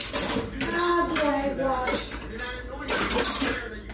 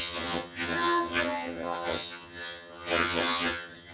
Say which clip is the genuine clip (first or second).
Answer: first